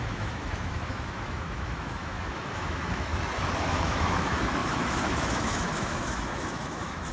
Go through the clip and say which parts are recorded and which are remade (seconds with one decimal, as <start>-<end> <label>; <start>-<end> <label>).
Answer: 0.0-3.1 remade; 3.1-3.6 recorded; 3.6-7.1 remade